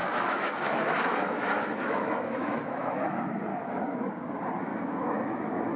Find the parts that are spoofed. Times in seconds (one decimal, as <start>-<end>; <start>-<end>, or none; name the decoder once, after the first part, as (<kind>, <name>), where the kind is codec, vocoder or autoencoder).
0.0-3.0 (autoencoder, DAC-VAE); 3.5-4.1; 4.7-5.8

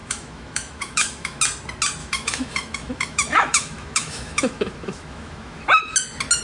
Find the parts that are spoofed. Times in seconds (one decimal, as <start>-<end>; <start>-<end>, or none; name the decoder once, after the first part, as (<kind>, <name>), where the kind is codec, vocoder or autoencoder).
0.0-1.4 (autoencoder, DAC-VAE); 2.0-5.8

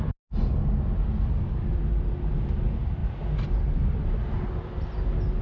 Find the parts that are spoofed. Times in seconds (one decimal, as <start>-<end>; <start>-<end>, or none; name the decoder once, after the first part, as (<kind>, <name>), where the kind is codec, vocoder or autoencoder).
none

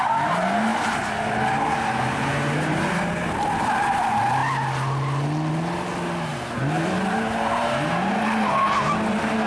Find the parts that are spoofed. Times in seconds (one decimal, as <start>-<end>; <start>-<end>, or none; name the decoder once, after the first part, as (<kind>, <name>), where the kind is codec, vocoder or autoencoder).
6.3-8.2 (vocoder, BigVGAN v2)

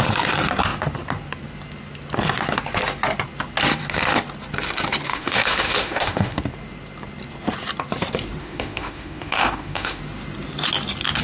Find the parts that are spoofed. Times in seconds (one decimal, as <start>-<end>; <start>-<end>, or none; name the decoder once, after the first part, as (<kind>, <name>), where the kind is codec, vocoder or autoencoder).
5.1-6.4 (autoencoder, DAC-VAE); 8.4-10.0

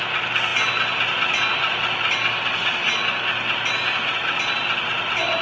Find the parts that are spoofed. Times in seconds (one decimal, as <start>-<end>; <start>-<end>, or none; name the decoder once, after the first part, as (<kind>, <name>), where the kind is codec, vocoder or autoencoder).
none

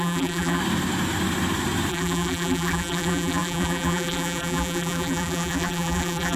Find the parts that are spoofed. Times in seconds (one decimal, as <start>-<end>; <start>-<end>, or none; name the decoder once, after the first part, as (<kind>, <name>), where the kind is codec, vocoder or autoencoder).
0.0-0.6 (vocoder, BigVGAN v2); 1.9-6.4